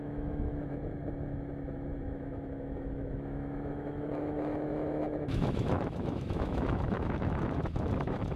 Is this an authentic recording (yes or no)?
no